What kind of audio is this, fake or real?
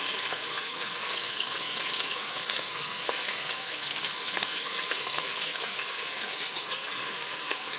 fake